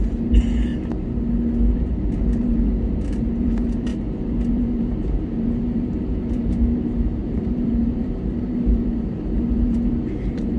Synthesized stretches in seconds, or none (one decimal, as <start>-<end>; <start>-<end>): 0.0-0.7; 1.7-3.9; 4.5-10.6